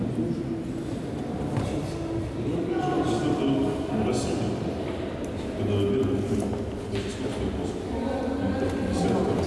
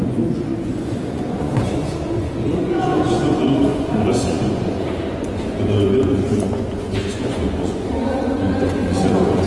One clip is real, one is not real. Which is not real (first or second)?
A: second